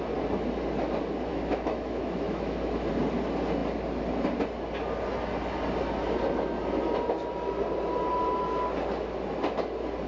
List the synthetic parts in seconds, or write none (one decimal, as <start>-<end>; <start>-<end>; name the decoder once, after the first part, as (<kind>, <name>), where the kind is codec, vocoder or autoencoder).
1.3-2.9 (autoencoder, DAC-VAE)